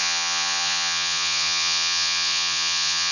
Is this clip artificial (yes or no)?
yes